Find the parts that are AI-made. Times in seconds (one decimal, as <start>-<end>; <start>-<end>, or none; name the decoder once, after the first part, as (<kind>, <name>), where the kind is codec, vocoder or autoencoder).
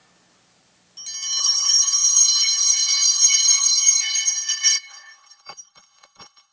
1.4-6.5 (codec, HILCodec)